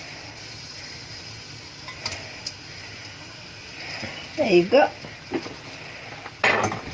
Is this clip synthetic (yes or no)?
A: no